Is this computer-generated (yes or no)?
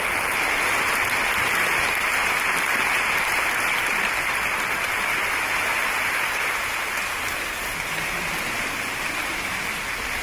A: no